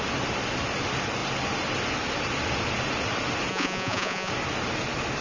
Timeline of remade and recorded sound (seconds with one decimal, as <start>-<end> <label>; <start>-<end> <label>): 0.0-3.5 recorded; 3.5-4.3 remade; 4.3-5.2 recorded